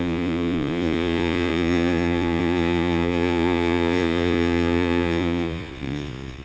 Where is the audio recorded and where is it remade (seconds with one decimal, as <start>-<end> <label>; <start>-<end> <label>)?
0.0-6.4 remade